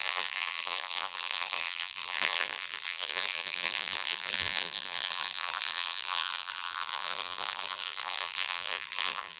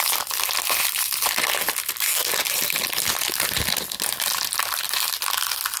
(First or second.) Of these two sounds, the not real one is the first